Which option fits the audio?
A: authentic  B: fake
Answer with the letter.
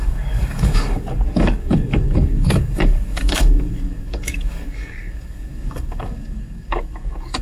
B